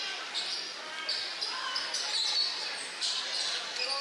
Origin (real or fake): real